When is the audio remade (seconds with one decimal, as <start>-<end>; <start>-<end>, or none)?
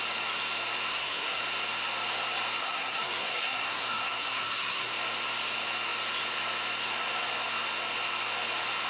0.9-1.4; 2.6-4.9